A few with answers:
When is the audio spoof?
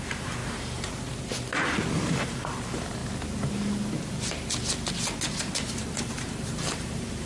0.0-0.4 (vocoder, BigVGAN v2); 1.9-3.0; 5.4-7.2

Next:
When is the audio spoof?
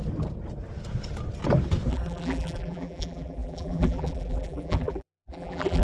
1.9-5.8 (vocoder, BigVGAN v2)